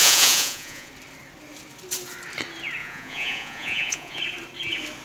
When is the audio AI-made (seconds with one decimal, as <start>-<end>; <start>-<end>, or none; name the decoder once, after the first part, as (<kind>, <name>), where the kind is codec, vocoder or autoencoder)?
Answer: 0.0-0.9 (vocoder, Vocos); 2.8-4.2